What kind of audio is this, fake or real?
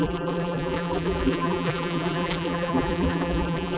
fake